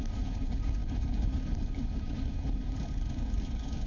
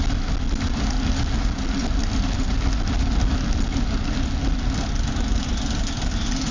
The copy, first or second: first